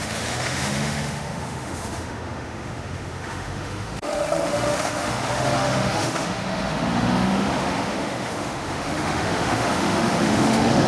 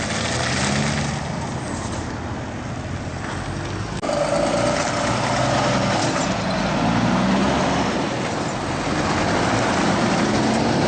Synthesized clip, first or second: first